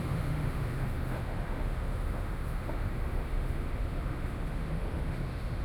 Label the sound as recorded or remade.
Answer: remade